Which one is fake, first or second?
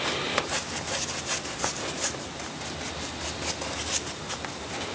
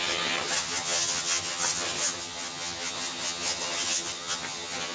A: second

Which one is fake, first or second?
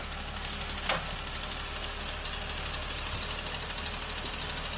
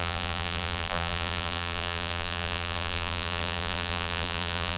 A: second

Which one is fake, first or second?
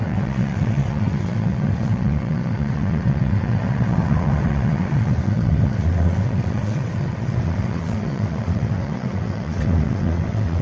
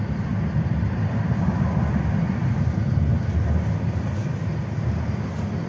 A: first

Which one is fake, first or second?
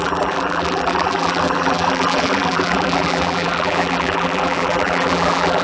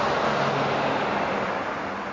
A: first